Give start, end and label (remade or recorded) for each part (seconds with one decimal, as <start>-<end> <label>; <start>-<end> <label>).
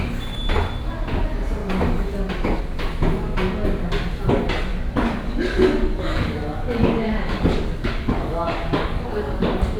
0.0-1.6 recorded; 1.6-2.6 remade; 2.6-4.7 recorded; 4.7-9.4 remade; 9.4-9.8 recorded